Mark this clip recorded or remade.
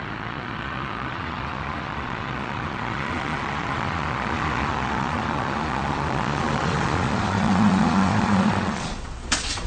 remade